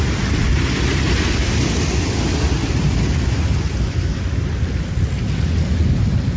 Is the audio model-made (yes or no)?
no